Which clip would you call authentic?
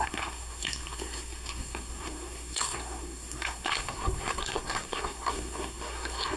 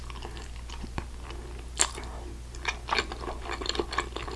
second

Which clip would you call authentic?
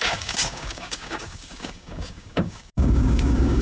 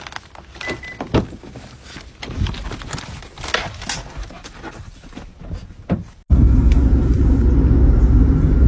second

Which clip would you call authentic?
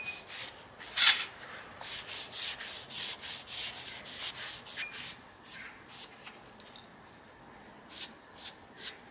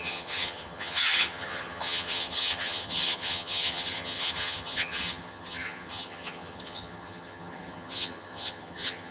first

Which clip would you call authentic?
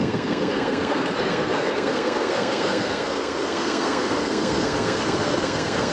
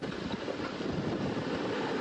second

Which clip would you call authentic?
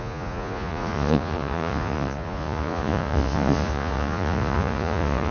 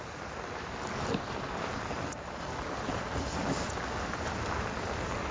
second